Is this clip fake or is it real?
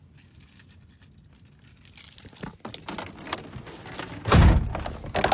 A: real